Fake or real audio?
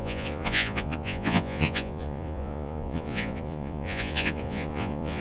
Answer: fake